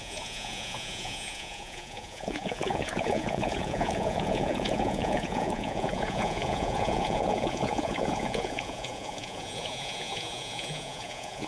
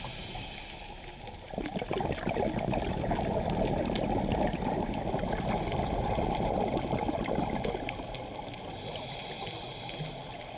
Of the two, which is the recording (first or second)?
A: second